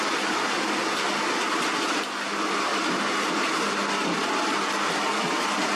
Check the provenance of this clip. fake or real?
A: real